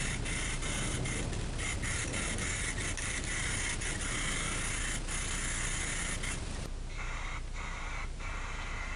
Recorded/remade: recorded